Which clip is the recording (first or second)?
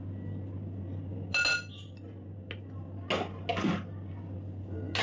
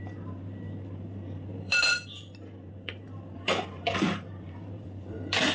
first